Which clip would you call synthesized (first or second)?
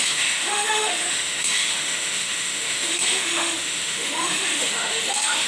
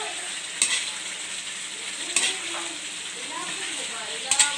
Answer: first